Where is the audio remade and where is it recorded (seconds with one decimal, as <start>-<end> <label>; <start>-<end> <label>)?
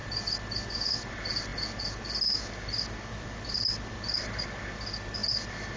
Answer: 0.0-5.8 recorded